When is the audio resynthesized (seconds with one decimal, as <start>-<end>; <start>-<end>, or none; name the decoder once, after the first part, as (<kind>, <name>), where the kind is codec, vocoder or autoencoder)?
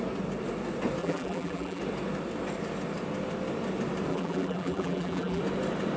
1.0-1.8 (vocoder, BigVGAN v2); 4.1-5.4